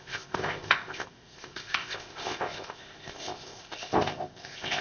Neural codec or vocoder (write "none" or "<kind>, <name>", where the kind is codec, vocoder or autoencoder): codec, ZipCodec